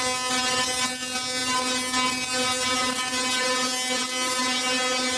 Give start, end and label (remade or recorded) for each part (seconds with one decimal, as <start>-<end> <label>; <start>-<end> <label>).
0.0-5.2 recorded